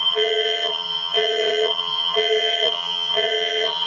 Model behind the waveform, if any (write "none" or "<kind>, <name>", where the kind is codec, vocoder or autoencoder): vocoder, HiFi-GAN